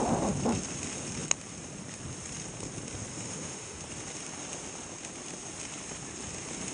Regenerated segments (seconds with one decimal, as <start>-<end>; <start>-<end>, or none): 3.1-3.8